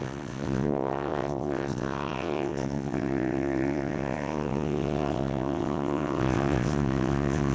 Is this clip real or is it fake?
fake